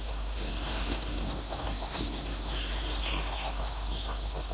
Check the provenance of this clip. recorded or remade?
remade